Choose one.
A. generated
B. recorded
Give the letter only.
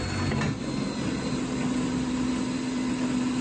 B